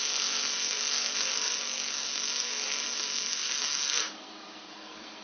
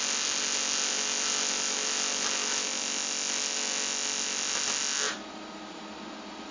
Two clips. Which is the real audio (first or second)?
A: second